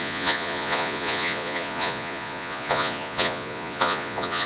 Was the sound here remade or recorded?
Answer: remade